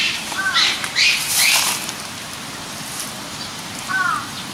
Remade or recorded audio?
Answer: remade